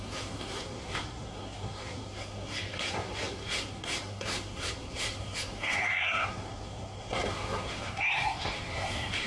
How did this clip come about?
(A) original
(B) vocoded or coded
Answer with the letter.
B